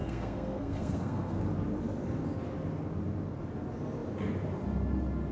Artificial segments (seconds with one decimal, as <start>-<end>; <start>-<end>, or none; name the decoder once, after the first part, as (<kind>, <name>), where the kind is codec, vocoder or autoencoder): 0.0-1.4 (codec, SNAC)